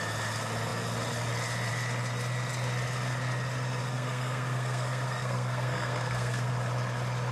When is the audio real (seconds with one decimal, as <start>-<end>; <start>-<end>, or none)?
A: 0.0-3.8; 6.5-7.3